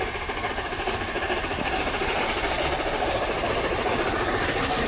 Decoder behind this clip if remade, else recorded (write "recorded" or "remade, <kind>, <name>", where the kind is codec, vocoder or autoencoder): remade, vocoder, BigVGAN v2